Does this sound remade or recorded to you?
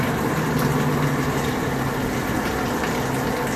recorded